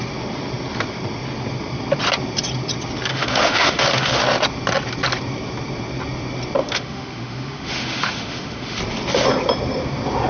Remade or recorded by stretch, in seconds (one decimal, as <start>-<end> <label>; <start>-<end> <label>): 0.0-3.1 recorded; 3.1-4.2 remade; 4.2-6.6 recorded; 6.6-8.8 remade; 8.8-10.3 recorded